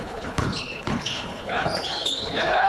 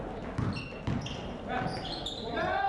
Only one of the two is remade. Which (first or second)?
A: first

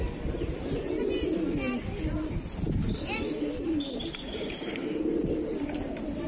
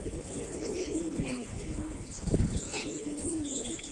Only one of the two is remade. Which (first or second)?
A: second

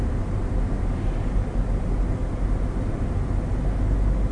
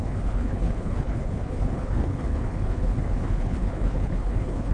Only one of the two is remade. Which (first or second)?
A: second